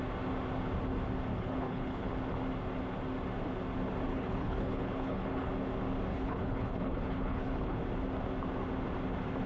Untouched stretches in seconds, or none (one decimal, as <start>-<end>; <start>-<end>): 0.0-1.3; 2.1-4.1; 5.5-6.1; 7.8-9.5